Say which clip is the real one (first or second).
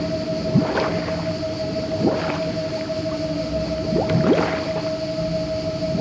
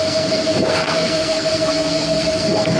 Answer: first